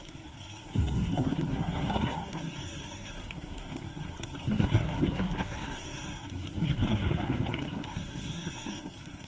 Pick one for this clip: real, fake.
fake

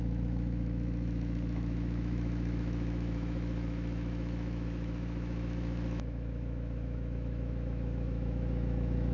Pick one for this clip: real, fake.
fake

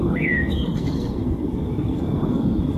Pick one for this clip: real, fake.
fake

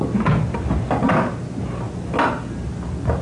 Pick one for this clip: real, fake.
real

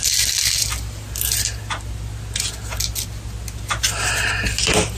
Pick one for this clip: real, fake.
real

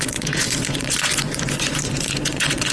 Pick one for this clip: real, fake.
fake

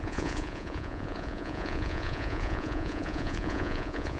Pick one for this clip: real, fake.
fake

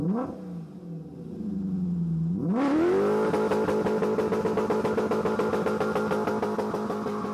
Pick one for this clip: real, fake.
real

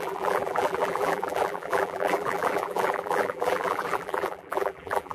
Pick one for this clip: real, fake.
fake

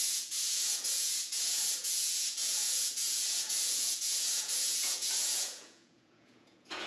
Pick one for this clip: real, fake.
fake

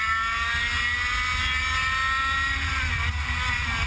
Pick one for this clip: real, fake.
real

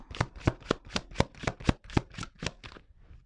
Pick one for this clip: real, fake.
real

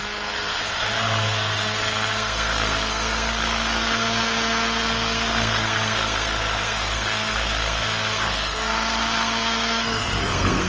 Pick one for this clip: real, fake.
fake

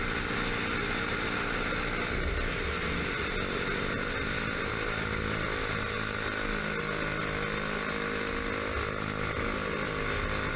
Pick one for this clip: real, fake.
real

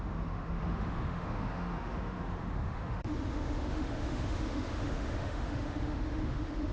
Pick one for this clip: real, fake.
fake